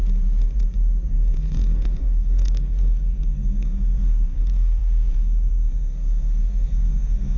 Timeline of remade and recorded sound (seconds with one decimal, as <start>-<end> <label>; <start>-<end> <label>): 0.0-1.1 recorded; 1.1-7.4 remade